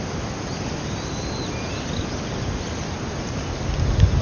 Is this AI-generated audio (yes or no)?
no